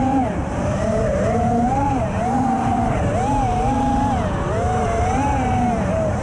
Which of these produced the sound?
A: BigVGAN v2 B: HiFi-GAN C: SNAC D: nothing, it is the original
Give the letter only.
A